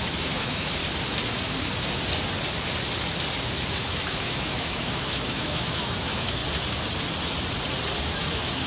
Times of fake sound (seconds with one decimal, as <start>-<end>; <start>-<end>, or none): 0.0-0.8; 3.7-6.4; 8.0-8.7